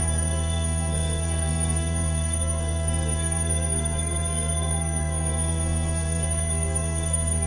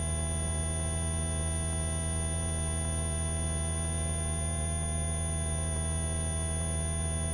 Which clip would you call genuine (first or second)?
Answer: second